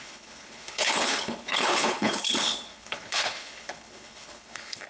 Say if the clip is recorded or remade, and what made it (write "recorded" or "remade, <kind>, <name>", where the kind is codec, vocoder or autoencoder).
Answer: remade, codec, HILCodec